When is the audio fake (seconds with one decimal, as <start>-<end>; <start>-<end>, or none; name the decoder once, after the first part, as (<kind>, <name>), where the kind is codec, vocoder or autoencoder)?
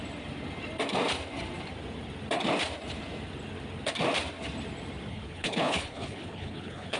5.1-7.0 (codec, HILCodec)